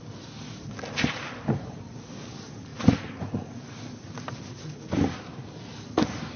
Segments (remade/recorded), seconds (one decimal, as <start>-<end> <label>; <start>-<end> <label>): 0.0-2.7 recorded; 2.7-3.8 remade; 3.8-6.4 recorded